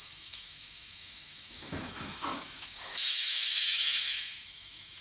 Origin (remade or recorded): remade